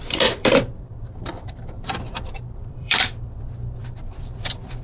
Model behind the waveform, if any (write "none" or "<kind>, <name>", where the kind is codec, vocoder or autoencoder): vocoder, BigVGAN v2